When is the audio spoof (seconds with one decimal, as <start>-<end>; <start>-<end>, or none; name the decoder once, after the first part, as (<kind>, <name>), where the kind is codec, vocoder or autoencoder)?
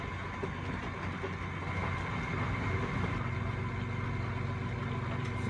1.8-3.6 (vocoder, BigVGAN v2)